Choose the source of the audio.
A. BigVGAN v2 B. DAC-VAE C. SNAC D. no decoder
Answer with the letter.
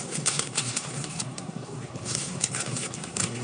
C